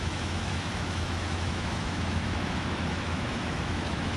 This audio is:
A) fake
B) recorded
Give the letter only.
A